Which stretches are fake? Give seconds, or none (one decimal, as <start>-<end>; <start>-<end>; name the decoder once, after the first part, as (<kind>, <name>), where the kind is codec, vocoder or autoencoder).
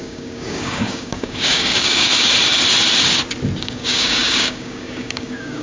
0.0-2.1 (codec, DAC); 3.6-5.6